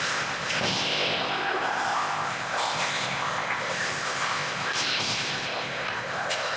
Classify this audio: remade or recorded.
remade